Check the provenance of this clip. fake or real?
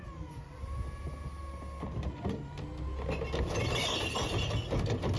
real